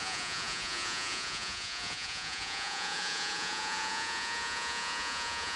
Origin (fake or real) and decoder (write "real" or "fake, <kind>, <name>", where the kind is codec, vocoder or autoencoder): fake, vocoder, Vocos